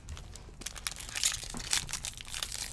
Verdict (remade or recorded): recorded